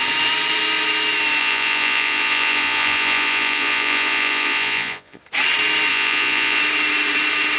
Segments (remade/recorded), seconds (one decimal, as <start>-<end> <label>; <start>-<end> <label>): 0.0-1.4 recorded; 1.4-5.2 remade; 5.2-5.9 recorded; 5.9-6.6 remade; 6.6-7.6 recorded